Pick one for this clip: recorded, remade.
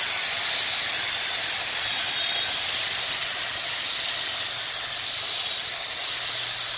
recorded